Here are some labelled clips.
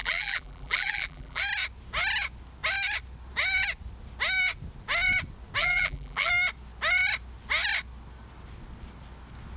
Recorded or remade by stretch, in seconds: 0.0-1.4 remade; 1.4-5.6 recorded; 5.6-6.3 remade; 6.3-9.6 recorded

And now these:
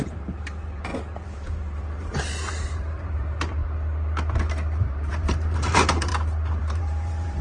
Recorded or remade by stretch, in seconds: 0.0-3.6 remade; 3.6-4.8 recorded; 4.8-6.1 remade; 6.1-6.6 recorded; 6.6-7.4 remade

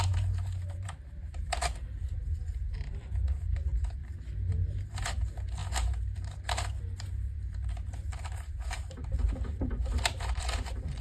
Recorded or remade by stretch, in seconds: 0.0-4.0 remade; 4.0-4.5 recorded; 4.5-11.0 remade

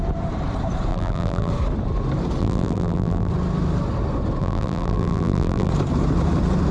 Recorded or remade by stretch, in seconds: 0.0-0.9 recorded; 0.9-1.5 remade; 1.5-2.4 recorded; 2.4-3.3 remade; 3.3-4.4 recorded; 4.4-5.7 remade; 5.7-6.7 recorded

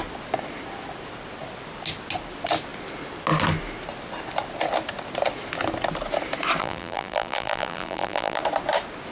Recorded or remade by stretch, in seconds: 0.0-6.6 recorded; 6.6-8.4 remade; 8.4-9.1 recorded